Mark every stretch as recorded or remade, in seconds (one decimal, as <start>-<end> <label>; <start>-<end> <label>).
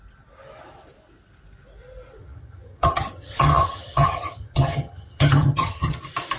0.0-2.2 recorded; 2.2-6.0 remade; 6.0-6.4 recorded